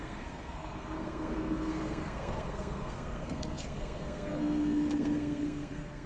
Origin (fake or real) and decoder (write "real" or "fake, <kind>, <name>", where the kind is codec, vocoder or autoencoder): fake, codec, SNAC